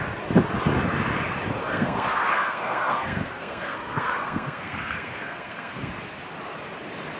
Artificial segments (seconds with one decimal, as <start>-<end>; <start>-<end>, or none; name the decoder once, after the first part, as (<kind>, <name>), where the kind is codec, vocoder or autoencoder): 1.6-5.9 (codec, SNAC)